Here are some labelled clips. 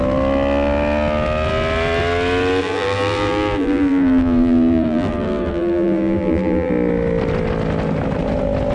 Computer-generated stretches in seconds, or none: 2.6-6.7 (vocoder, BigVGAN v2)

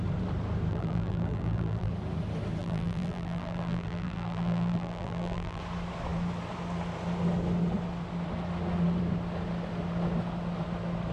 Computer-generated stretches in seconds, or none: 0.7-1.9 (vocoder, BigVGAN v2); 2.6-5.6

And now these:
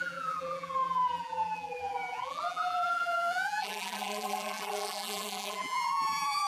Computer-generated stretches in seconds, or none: 0.0-6.5 (vocoder, BigVGAN v2)

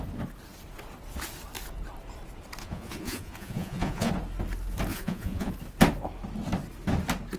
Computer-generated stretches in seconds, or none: 2.6-4.1 (vocoder, Vocos); 4.9-5.5

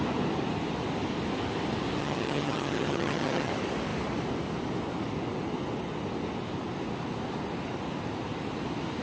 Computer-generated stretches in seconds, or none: 2.0-3.5 (vocoder, HiFi-GAN)